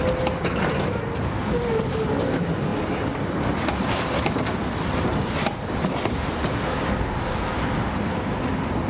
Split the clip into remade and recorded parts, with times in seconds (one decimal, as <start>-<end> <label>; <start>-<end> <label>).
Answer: 0.0-8.9 recorded